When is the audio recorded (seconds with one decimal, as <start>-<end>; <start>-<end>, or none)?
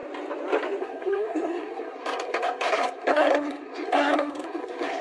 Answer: 0.0-0.8